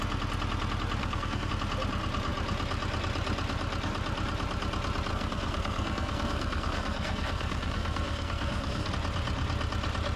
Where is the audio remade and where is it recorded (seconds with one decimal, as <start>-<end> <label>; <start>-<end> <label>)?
0.0-1.0 recorded; 1.0-1.5 remade; 1.5-5.1 recorded; 5.1-8.9 remade; 8.9-10.2 recorded